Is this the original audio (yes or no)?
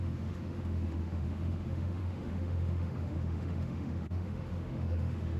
no